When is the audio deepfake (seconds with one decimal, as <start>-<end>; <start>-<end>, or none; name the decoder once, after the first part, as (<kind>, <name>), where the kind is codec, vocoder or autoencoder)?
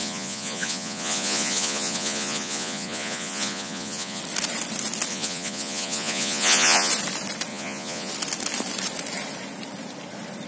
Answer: 0.0-4.2 (vocoder, Vocos); 5.1-6.9; 7.5-8.1